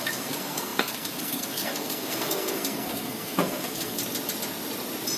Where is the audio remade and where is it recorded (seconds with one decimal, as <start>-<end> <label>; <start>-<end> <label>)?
0.0-4.0 remade; 4.0-5.2 recorded